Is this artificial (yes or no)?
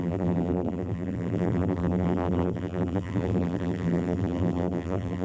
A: yes